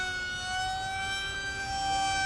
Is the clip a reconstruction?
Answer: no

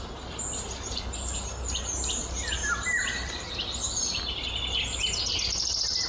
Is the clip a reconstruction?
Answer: no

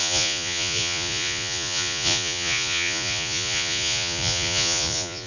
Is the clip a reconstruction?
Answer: yes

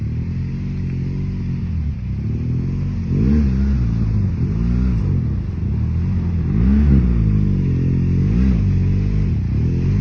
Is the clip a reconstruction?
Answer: no